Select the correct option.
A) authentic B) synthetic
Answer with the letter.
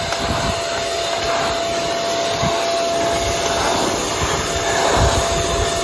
A